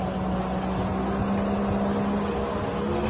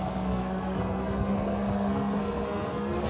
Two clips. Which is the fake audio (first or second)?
second